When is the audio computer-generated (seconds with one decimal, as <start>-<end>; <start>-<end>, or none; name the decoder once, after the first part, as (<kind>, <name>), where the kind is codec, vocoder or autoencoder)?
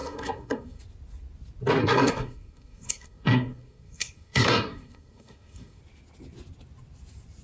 0.0-0.8 (codec, SNAC); 1.8-5.8